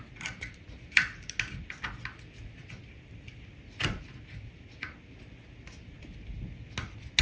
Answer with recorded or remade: recorded